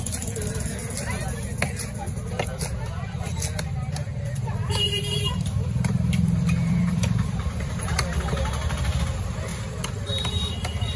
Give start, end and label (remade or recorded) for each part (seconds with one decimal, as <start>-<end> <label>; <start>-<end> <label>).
0.0-4.0 recorded; 4.0-7.7 remade; 7.7-9.5 recorded; 9.5-10.4 remade; 10.4-11.0 recorded